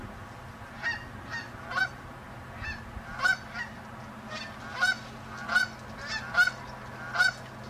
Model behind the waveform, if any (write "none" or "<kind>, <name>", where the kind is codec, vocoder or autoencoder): none